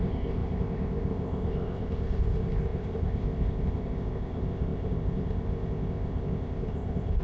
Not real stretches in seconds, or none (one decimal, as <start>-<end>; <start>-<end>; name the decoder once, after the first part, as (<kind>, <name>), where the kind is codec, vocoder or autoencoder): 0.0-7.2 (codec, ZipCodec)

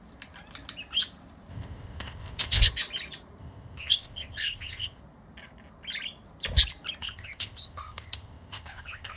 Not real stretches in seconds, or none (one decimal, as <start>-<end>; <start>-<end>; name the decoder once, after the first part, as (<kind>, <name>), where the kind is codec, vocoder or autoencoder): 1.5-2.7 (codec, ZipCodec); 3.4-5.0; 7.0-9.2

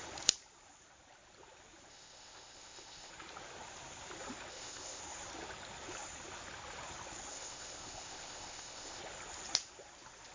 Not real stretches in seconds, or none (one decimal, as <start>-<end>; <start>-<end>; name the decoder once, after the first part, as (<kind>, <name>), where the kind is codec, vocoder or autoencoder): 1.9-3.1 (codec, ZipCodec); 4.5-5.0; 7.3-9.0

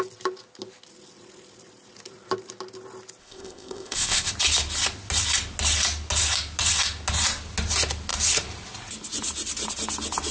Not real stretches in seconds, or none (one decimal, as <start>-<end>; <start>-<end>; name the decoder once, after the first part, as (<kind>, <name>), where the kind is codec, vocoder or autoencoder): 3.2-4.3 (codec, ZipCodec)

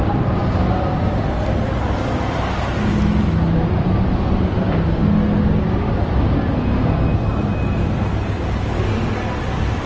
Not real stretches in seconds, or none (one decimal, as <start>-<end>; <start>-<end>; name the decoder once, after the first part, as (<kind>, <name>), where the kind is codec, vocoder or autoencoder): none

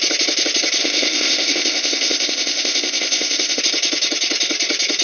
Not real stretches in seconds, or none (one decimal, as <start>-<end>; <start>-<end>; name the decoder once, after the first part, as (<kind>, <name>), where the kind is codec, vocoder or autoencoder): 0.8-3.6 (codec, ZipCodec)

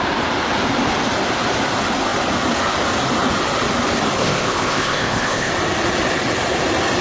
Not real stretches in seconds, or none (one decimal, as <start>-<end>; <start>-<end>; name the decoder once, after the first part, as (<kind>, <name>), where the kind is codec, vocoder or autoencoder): 4.2-5.5 (codec, ZipCodec)